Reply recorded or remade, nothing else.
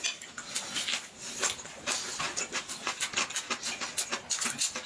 recorded